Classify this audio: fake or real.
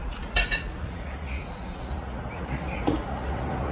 fake